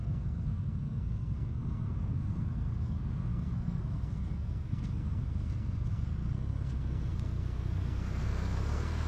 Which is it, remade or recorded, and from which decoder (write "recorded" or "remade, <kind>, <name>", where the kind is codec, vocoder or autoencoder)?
remade, codec, SNAC